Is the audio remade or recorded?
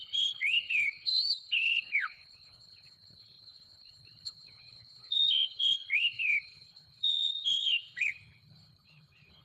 remade